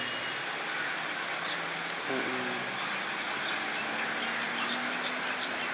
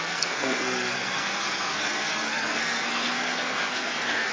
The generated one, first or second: second